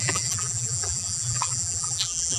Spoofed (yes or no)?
yes